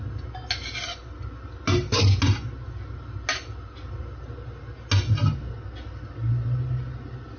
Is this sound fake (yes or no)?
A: no